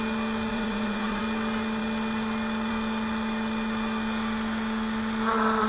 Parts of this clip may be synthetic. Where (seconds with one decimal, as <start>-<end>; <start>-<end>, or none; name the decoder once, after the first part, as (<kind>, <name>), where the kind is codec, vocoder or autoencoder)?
0.5-1.2 (vocoder, Vocos)